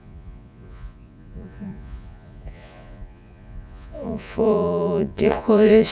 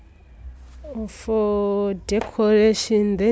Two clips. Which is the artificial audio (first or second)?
first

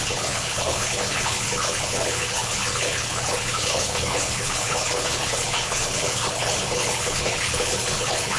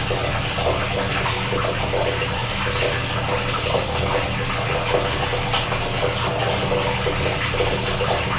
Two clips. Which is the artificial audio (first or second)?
first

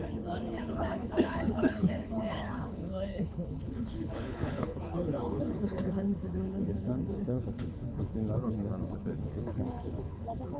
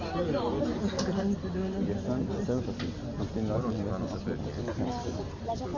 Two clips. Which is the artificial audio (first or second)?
first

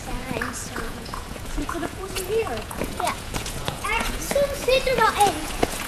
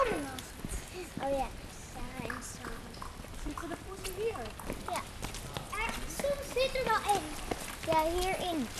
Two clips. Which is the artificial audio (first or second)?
first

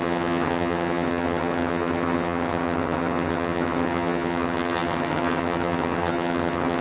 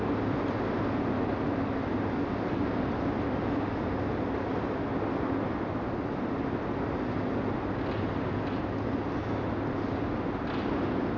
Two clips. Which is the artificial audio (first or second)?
first